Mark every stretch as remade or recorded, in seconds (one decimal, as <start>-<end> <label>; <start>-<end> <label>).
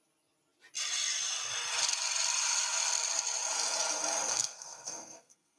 0.0-4.3 recorded; 4.3-5.6 remade